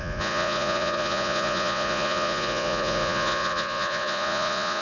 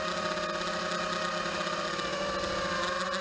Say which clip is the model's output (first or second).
first